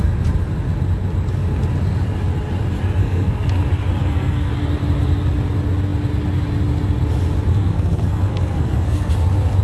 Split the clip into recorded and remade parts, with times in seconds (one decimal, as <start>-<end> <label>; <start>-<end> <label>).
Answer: 0.0-3.0 recorded; 3.0-3.5 remade; 3.5-4.0 recorded; 4.0-4.5 remade; 4.5-7.5 recorded; 7.5-9.1 remade; 9.1-9.6 recorded